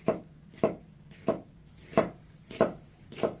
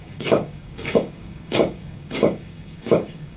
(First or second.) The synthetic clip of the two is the second